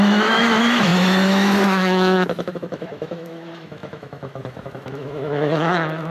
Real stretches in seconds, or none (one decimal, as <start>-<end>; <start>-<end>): none